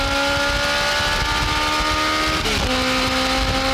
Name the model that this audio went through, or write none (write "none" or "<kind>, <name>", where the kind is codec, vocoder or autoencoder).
none